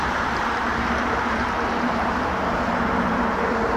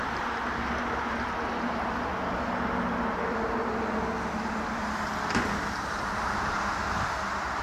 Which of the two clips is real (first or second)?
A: second